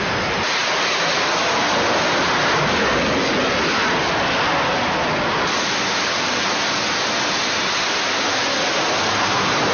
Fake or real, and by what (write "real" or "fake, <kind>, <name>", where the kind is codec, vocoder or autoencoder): real